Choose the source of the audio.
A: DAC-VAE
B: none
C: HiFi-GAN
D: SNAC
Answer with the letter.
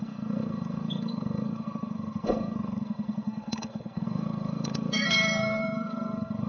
D